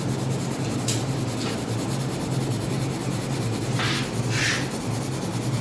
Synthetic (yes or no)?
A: no